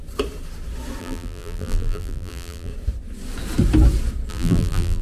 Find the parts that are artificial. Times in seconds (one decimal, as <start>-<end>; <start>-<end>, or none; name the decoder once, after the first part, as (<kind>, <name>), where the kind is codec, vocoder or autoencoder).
1.0-2.7 (vocoder, BigVGAN v2); 4.3-5.0